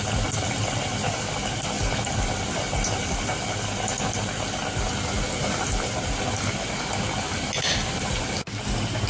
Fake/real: real